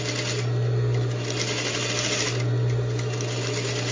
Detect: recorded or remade recorded